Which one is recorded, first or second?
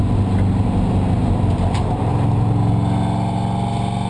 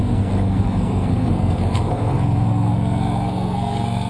first